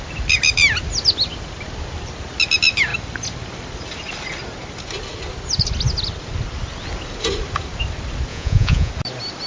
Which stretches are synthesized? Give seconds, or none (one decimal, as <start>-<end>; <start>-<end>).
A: 8.3-8.9